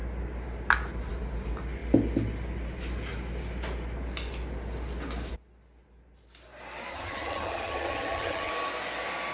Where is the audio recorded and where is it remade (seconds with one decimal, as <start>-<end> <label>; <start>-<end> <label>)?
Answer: 0.0-6.9 recorded; 6.9-8.5 remade; 8.5-9.3 recorded